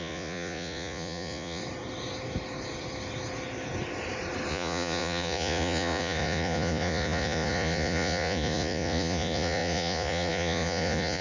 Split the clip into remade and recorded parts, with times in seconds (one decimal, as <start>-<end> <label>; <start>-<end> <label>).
0.0-1.6 remade; 1.6-4.5 recorded; 4.5-11.2 remade